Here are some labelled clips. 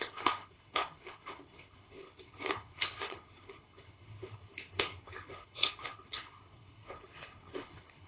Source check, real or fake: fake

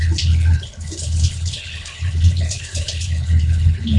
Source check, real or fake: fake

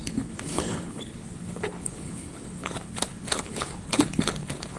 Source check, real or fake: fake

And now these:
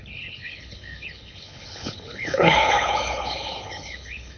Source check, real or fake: fake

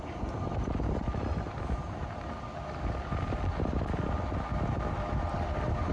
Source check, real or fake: real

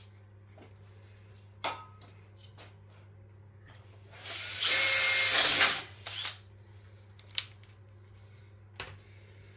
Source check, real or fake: real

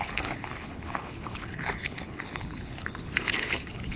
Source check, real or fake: fake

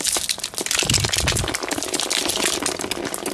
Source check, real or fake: real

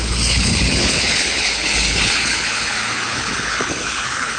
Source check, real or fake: fake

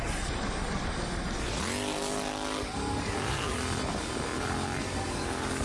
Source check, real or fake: real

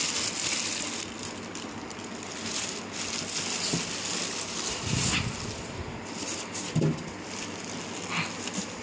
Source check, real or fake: real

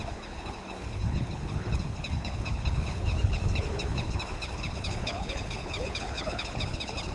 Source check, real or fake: fake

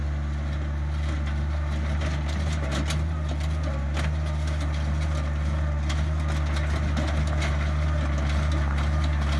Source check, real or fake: real